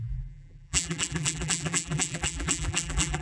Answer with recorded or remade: remade